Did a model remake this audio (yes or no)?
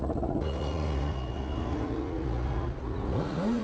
yes